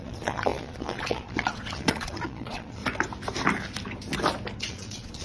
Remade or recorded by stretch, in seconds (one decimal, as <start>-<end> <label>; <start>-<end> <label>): 0.0-2.8 remade; 2.8-4.6 recorded; 4.6-5.2 remade